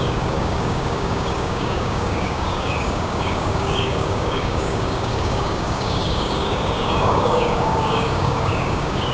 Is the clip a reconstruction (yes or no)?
yes